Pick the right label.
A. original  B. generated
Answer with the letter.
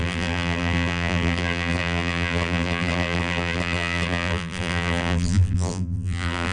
B